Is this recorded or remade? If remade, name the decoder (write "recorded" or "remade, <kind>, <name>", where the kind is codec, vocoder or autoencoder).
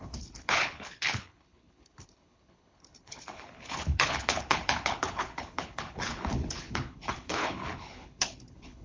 remade, codec, HILCodec